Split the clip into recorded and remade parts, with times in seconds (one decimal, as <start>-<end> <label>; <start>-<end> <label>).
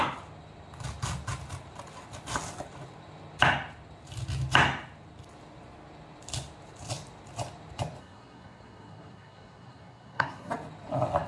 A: 0.0-8.0 recorded; 8.0-10.5 remade; 10.5-11.3 recorded